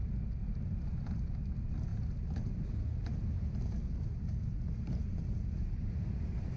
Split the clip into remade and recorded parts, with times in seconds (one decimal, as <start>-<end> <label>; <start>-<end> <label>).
0.0-0.4 recorded; 0.4-0.9 remade; 0.9-1.9 recorded; 1.9-5.9 remade; 5.9-6.6 recorded